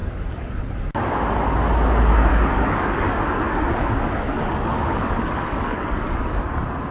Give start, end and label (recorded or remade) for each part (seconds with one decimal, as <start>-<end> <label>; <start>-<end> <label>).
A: 0.0-0.6 remade; 0.6-2.3 recorded; 2.3-6.4 remade; 6.4-6.9 recorded